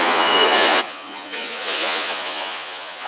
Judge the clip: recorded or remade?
remade